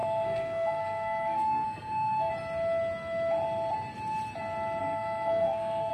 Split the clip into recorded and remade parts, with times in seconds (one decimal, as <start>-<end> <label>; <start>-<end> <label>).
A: 0.0-2.3 remade; 2.3-4.8 recorded; 4.8-5.9 remade